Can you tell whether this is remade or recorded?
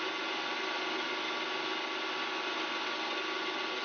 recorded